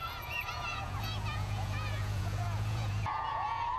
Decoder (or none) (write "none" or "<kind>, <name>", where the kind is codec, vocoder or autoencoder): vocoder, Vocos